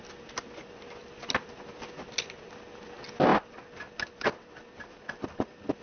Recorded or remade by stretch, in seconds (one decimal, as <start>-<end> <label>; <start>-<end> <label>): 0.0-5.8 recorded